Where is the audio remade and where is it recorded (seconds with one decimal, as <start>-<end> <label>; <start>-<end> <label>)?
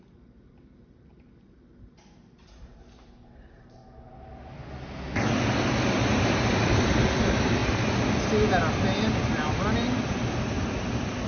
0.0-3.8 remade; 3.8-6.6 recorded; 6.6-7.6 remade; 7.6-11.3 recorded